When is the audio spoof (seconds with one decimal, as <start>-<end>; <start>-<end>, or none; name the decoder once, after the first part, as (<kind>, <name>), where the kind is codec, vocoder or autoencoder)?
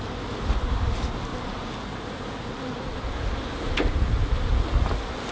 1.3-2.4 (vocoder, BigVGAN v2); 2.9-4.5